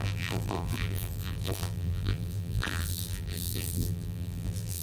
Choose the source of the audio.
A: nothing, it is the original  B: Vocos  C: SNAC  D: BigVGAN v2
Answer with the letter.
D